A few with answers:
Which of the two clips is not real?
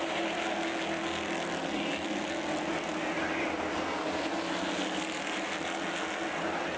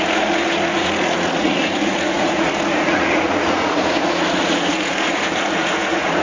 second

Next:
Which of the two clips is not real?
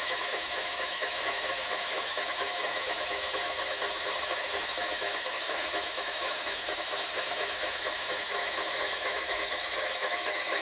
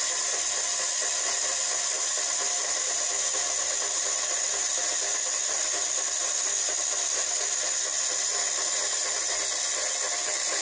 first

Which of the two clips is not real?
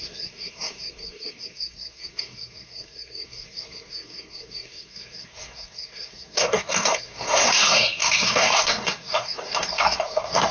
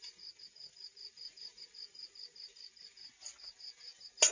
first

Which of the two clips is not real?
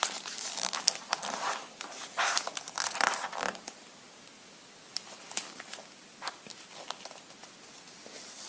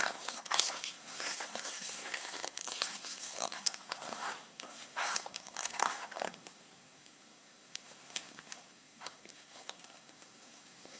second